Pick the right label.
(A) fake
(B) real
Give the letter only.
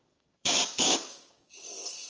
A